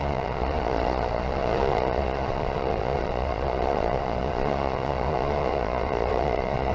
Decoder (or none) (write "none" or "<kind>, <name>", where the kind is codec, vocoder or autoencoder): vocoder, Vocos